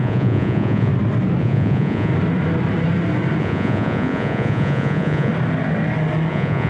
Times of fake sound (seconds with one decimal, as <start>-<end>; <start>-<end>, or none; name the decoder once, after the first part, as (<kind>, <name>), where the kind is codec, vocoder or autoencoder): 0.0-0.9 (vocoder, Vocos); 1.4-2.1; 3.4-5.3; 6.3-6.7